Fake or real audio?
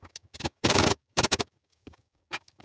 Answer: fake